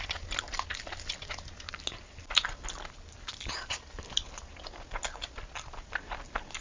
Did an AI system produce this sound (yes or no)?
no